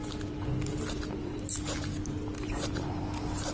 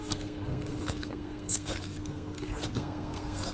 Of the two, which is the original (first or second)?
first